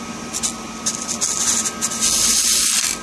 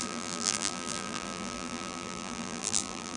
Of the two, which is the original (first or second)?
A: first